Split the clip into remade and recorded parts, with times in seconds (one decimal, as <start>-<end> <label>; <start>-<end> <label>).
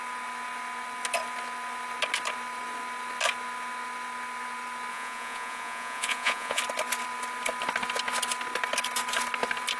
0.0-4.9 recorded; 4.9-6.6 remade; 6.6-9.8 recorded